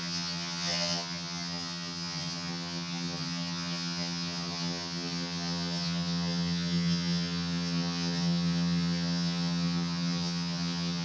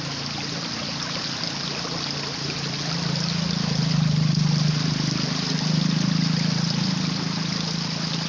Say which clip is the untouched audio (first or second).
second